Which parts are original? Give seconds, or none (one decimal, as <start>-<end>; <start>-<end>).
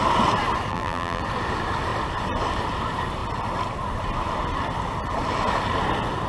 0.0-0.7; 1.2-6.3